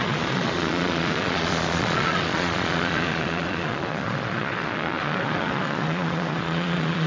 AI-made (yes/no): yes